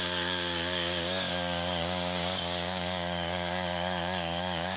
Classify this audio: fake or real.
fake